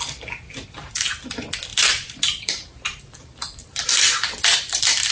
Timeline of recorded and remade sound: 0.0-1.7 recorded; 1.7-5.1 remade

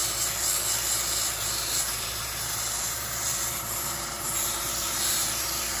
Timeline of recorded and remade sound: 0.0-1.9 recorded; 1.9-5.8 remade

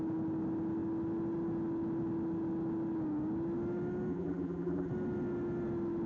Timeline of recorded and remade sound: 0.0-4.1 recorded; 4.1-4.9 remade; 4.9-6.1 recorded